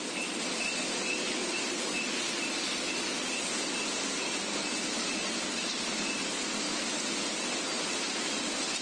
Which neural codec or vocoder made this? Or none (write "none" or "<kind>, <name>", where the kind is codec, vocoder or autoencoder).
none